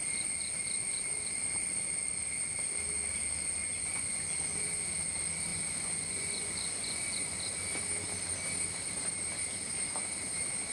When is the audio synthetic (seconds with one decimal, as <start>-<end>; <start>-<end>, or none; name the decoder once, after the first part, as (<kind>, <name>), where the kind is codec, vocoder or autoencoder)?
3.6-4.3 (vocoder, Vocos); 5.5-7.4